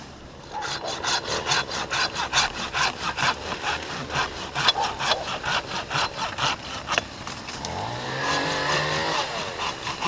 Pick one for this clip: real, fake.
real